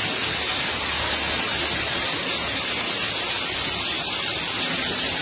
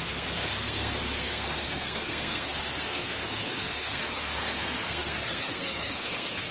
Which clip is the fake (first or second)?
second